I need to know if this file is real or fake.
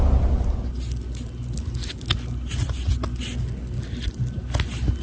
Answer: real